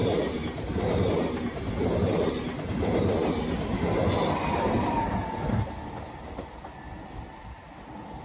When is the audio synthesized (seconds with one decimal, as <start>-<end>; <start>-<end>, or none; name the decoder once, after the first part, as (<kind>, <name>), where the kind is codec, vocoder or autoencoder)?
none